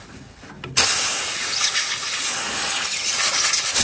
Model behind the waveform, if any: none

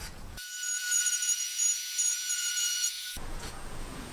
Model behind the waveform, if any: vocoder, Vocos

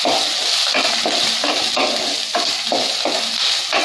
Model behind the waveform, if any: none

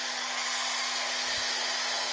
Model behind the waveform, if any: none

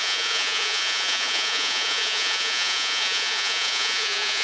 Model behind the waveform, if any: vocoder, Vocos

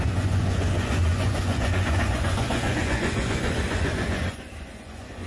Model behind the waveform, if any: vocoder, Vocos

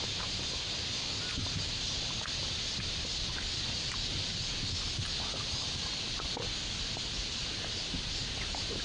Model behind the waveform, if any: none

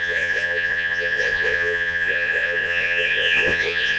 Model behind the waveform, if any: vocoder, Vocos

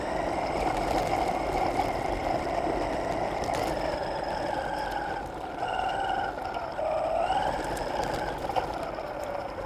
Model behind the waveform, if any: none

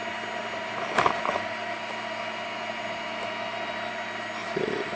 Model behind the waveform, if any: none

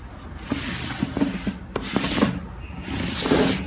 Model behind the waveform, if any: none